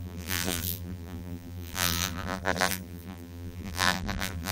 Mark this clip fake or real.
fake